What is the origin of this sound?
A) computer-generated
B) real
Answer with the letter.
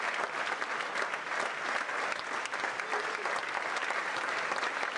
B